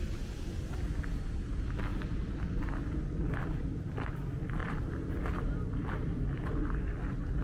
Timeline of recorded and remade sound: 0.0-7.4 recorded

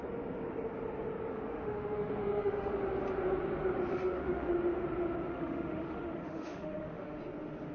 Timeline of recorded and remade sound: 0.0-1.3 recorded; 1.3-2.7 remade; 2.7-3.9 recorded; 3.9-4.5 remade; 4.5-5.3 recorded; 5.3-7.2 remade; 7.2-7.7 recorded

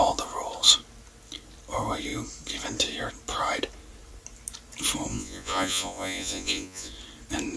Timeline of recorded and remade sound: 0.0-5.1 recorded; 5.1-6.9 remade; 6.9-7.6 recorded

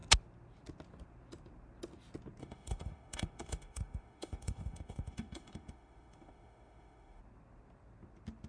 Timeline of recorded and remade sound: 0.0-2.4 recorded; 2.4-7.2 remade; 7.2-8.5 recorded

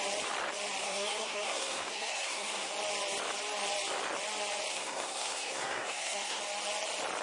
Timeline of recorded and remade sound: 0.0-0.8 recorded; 0.8-2.7 remade; 2.7-4.7 recorded; 4.7-6.4 remade; 6.4-7.2 recorded

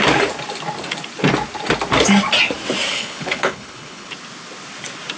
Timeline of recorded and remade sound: 0.0-2.9 recorded; 2.9-4.1 remade; 4.1-5.2 recorded

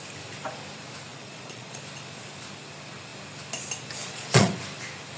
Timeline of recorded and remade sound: 0.0-1.1 recorded; 1.1-1.8 remade; 1.8-4.0 recorded; 4.0-4.5 remade; 4.5-5.2 recorded

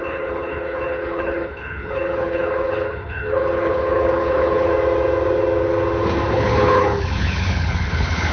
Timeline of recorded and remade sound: 0.0-4.7 remade; 4.7-6.3 recorded; 6.3-8.3 remade